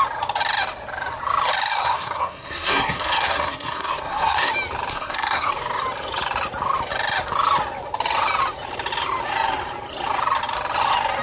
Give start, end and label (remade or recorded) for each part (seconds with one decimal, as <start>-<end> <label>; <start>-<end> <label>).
0.0-1.8 recorded; 1.8-4.5 remade; 4.5-4.9 recorded; 4.9-5.5 remade; 5.5-11.2 recorded